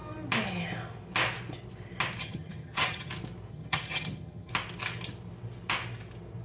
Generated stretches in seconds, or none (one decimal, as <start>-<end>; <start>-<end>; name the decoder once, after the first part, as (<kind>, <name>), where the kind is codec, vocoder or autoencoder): 2.2-3.1 (vocoder, HiFi-GAN); 3.5-4.5